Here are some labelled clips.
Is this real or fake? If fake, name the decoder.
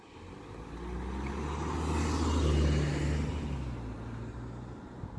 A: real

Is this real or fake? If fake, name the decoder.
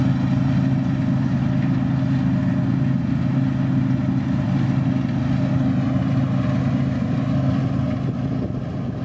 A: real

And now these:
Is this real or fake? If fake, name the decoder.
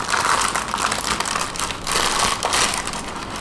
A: real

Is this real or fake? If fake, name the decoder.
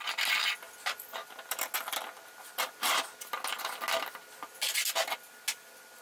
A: real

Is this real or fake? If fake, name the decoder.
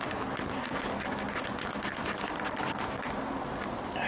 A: real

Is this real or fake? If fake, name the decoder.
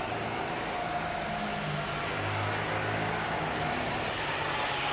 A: real